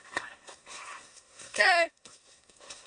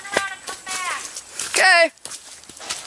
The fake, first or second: first